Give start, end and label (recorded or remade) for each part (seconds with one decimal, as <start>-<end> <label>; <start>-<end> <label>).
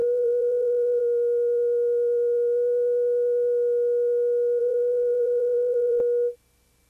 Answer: 0.0-1.0 remade; 1.0-4.6 recorded; 4.6-6.0 remade; 6.0-6.9 recorded